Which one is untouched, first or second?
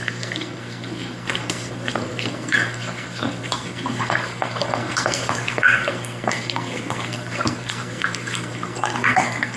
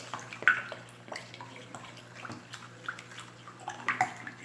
second